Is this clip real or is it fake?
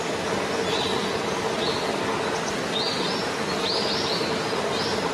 real